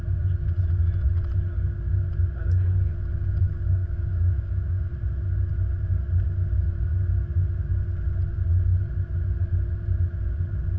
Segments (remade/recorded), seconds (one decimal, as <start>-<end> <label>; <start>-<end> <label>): 0.0-3.4 recorded; 3.4-4.9 remade; 4.9-10.8 recorded